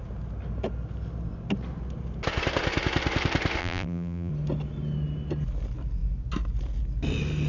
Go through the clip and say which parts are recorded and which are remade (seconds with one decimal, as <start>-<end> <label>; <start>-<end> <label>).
0.0-3.6 recorded; 3.6-4.3 remade; 4.3-7.5 recorded

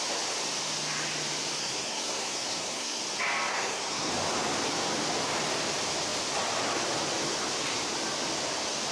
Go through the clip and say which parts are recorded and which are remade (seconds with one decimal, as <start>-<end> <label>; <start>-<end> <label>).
0.0-1.6 recorded; 1.6-3.0 remade; 3.0-3.5 recorded; 3.5-4.1 remade; 4.1-8.9 recorded

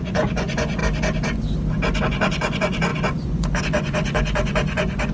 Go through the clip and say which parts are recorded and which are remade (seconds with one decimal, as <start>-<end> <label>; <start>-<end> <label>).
0.0-0.8 remade; 0.8-2.0 recorded; 2.0-5.1 remade

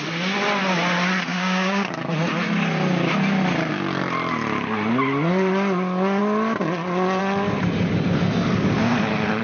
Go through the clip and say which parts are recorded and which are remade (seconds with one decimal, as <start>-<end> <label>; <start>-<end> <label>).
0.0-1.3 recorded; 1.3-1.9 remade; 1.9-9.4 recorded

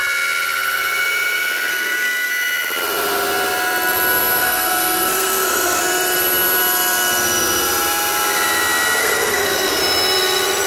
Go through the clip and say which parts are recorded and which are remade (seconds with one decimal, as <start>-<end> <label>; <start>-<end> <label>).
0.0-1.7 recorded; 1.7-2.3 remade; 2.3-4.4 recorded; 4.4-5.8 remade; 5.8-9.0 recorded; 9.0-9.8 remade; 9.8-10.7 recorded

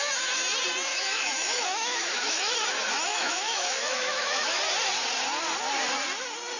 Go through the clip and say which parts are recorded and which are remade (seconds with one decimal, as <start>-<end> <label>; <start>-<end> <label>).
0.0-0.9 recorded; 0.9-2.5 remade; 2.5-3.1 recorded; 3.1-4.6 remade; 4.6-6.6 recorded

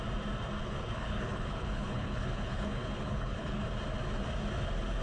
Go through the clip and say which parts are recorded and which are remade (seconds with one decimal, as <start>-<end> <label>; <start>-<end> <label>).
0.0-0.6 recorded; 0.6-3.6 remade; 3.6-5.0 recorded